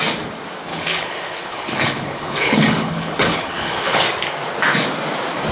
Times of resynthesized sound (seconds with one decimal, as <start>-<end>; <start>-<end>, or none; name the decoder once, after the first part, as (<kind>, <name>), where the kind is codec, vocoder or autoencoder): 0.7-4.0 (codec, HILCodec)